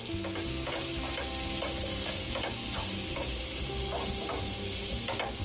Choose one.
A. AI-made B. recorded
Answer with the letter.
B